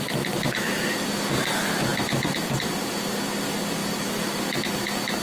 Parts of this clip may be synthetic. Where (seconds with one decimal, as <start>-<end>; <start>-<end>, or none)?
none